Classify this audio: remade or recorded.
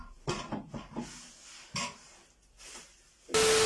recorded